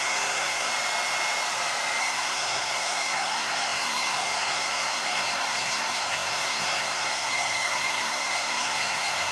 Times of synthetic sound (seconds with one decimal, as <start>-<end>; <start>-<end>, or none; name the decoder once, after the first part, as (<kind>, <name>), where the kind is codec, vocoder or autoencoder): 0.0-0.7 (codec, SNAC); 2.0-9.3